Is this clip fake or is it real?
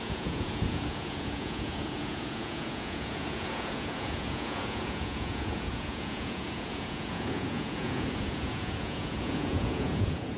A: fake